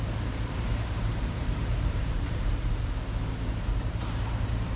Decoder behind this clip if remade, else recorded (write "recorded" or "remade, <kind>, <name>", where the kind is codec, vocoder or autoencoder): remade, vocoder, BigVGAN v2